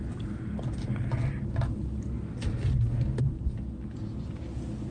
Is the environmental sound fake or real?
real